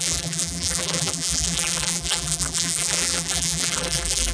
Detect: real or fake fake